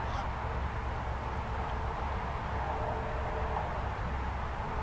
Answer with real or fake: real